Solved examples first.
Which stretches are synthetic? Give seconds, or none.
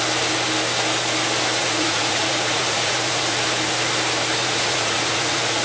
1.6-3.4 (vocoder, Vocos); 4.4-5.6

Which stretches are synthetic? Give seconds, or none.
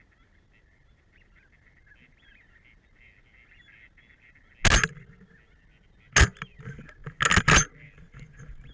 none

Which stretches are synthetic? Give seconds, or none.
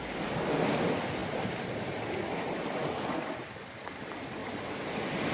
4.4-5.3 (vocoder, BigVGAN v2)